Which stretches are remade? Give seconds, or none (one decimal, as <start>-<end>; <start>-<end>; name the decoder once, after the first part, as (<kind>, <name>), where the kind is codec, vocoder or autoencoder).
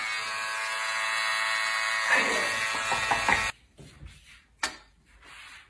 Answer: none